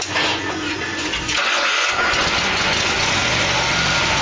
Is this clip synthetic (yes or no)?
yes